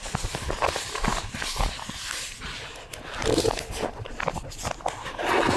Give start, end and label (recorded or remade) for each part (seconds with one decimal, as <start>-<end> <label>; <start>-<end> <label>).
0.0-5.6 recorded